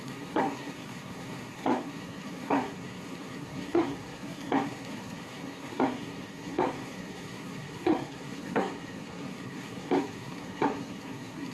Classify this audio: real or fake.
fake